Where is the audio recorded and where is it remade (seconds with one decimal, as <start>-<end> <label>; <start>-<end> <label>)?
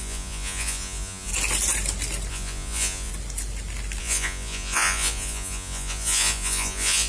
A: 0.0-1.3 remade; 1.3-2.3 recorded; 2.3-3.1 remade; 3.1-4.0 recorded; 4.0-7.1 remade